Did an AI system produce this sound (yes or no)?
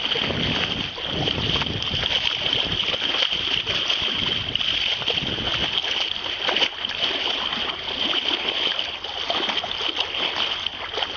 no